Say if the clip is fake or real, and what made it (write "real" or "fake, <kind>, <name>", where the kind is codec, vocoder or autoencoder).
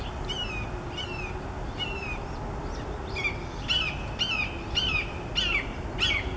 real